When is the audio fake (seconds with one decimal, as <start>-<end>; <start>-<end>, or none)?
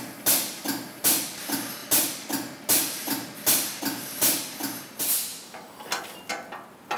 none